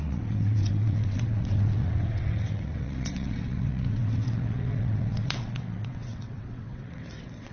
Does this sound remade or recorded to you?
remade